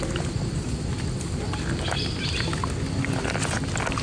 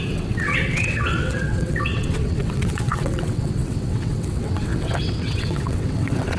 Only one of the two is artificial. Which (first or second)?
second